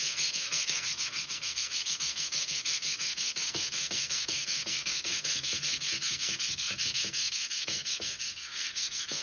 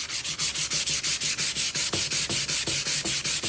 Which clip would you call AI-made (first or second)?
first